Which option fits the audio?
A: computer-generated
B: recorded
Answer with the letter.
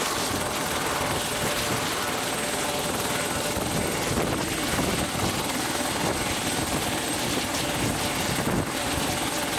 B